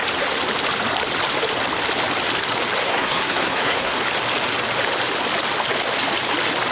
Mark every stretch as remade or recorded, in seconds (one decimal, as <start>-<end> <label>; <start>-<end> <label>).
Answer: 0.0-2.8 recorded; 2.8-4.0 remade; 4.0-6.7 recorded